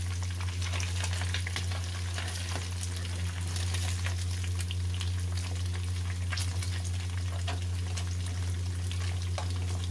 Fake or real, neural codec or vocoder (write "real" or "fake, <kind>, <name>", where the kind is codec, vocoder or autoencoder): real